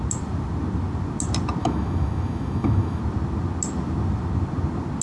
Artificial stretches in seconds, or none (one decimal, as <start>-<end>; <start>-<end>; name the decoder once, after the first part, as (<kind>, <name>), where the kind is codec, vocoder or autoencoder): 1.6-3.0 (autoencoder, DAC-VAE)